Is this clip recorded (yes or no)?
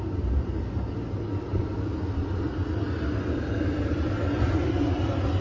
yes